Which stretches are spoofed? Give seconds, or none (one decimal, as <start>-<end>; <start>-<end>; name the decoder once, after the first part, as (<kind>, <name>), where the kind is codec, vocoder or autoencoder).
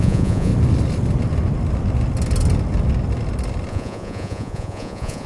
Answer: 0.0-0.5 (vocoder, Vocos); 3.7-5.3